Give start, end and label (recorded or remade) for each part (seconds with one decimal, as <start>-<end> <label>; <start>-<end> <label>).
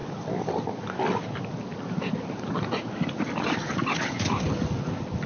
0.0-5.3 recorded